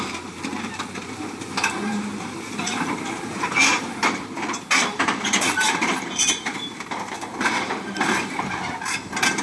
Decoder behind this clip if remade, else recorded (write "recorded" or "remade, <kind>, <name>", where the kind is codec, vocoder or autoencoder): remade, vocoder, BigVGAN v2